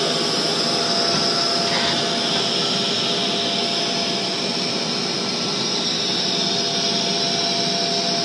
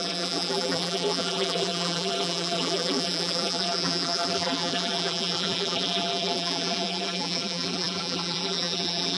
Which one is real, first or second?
first